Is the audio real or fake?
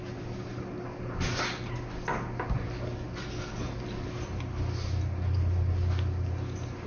real